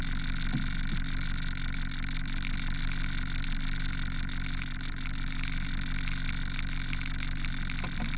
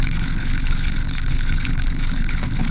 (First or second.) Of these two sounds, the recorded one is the first